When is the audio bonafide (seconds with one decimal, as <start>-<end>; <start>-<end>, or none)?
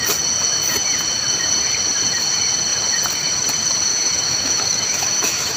0.0-3.9